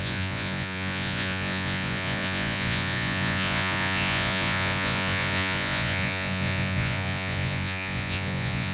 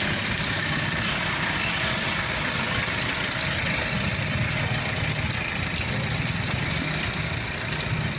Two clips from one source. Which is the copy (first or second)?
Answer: first